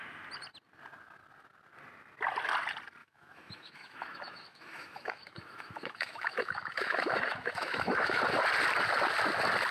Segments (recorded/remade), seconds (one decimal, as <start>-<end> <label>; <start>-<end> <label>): 0.0-3.0 recorded; 3.0-8.2 remade; 8.2-9.7 recorded